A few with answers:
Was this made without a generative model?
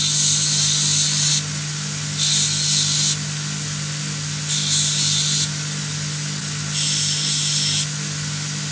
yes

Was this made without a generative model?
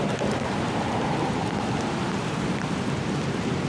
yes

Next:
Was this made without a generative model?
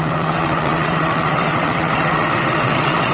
no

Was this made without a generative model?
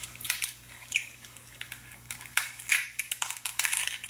no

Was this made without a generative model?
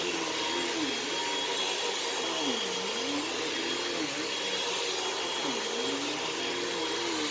yes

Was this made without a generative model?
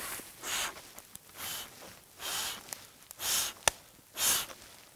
yes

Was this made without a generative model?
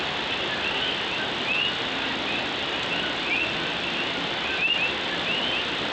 yes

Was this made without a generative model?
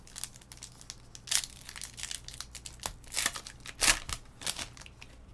yes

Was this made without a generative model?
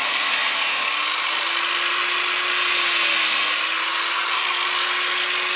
yes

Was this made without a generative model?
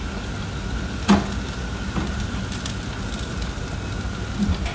yes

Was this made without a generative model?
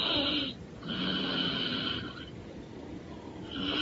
yes